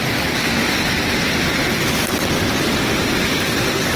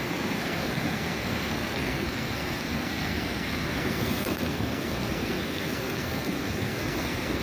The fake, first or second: second